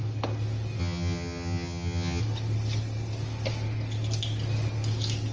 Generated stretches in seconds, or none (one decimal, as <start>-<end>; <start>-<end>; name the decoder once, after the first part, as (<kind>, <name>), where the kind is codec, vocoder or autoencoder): 0.8-2.2 (vocoder, HiFi-GAN)